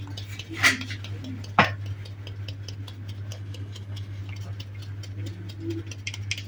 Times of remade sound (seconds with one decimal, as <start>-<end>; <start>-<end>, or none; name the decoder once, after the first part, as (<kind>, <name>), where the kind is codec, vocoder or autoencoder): 3.3-4.2 (codec, DAC)